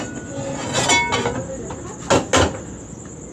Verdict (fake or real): real